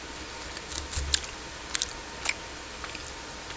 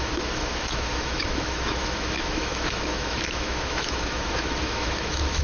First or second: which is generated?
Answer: second